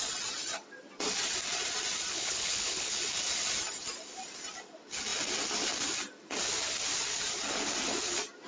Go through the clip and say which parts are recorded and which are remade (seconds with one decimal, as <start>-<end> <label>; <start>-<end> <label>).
0.0-2.1 recorded; 2.1-3.0 remade; 3.0-8.5 recorded